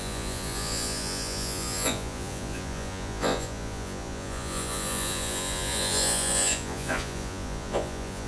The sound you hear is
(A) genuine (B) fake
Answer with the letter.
B